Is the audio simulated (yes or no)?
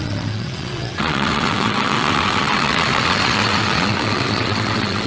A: yes